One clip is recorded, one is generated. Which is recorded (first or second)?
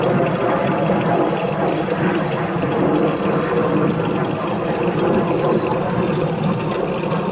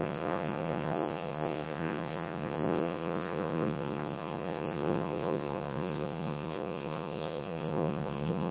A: first